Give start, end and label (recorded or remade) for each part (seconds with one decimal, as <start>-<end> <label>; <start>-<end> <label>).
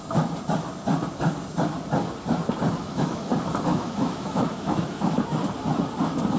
0.0-2.8 recorded; 2.8-3.3 remade; 3.3-3.7 recorded; 3.7-5.3 remade; 5.3-6.4 recorded